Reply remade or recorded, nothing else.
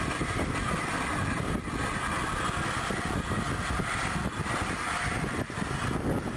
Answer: recorded